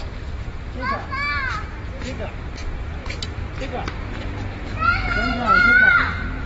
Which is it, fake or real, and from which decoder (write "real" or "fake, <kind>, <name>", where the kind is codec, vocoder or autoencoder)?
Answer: real